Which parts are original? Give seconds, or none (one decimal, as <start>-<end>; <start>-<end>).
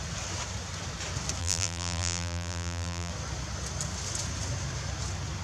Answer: 0.0-1.4; 3.1-5.4